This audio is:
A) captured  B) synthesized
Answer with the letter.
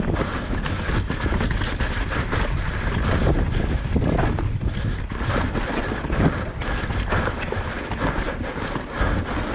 A